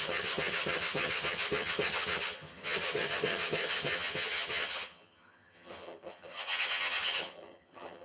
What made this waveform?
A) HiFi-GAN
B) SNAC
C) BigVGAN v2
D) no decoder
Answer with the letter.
A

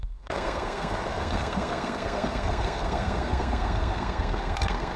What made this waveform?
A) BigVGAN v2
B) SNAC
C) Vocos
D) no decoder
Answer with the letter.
B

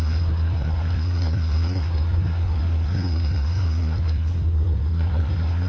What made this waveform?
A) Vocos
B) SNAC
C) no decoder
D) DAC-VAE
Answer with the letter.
B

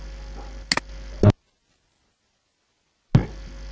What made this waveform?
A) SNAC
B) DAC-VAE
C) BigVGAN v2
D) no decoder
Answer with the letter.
D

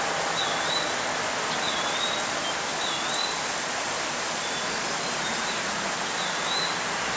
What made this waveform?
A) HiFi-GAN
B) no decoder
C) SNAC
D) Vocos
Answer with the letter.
B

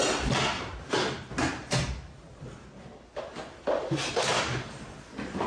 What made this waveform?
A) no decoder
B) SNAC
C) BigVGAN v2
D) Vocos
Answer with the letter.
A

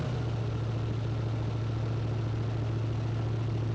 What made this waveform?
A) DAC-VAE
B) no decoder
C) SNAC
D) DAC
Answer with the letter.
B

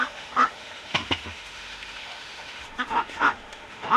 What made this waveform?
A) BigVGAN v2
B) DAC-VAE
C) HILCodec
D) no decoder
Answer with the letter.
B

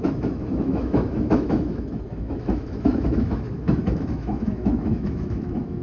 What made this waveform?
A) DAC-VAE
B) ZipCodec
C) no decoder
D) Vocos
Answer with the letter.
A